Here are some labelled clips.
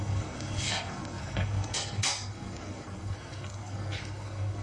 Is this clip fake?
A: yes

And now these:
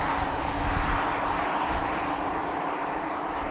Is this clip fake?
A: no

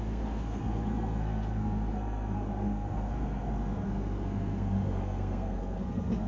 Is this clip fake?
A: yes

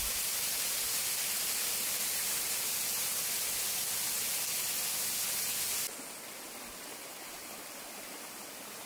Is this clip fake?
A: no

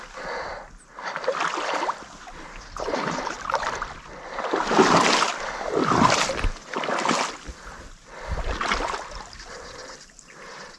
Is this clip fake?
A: no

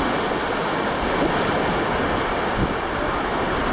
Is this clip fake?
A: no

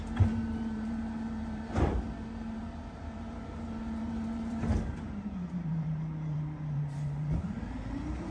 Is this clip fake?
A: yes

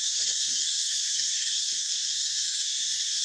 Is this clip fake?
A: yes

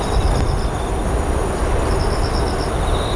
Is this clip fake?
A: no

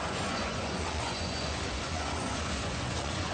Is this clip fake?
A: yes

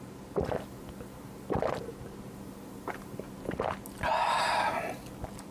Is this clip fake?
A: no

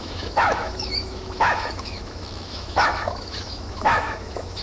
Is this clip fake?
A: yes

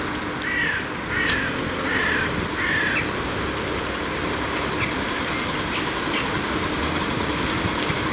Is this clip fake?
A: no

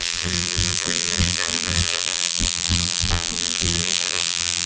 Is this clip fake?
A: yes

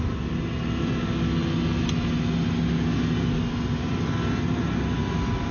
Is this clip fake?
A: no